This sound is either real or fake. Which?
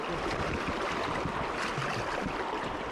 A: real